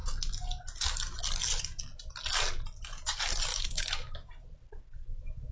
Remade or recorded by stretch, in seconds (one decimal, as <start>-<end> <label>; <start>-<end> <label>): 0.0-3.5 recorded; 3.5-4.3 remade; 4.3-5.5 recorded